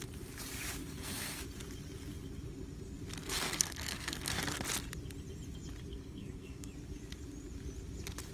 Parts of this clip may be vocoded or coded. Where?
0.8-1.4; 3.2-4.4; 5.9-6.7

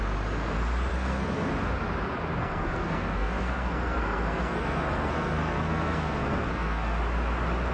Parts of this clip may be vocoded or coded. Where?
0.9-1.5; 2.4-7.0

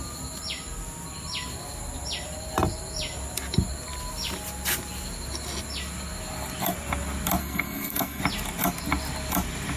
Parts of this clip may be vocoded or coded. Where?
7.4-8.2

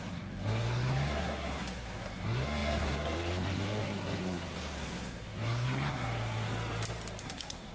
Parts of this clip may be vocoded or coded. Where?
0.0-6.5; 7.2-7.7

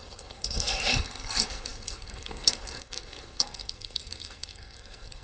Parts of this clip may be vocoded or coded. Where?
0.0-5.2

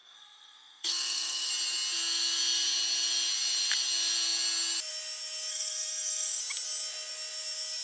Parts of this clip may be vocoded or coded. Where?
0.0-1.5; 5.5-6.4